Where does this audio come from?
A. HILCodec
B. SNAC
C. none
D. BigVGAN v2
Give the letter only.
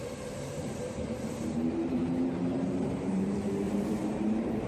D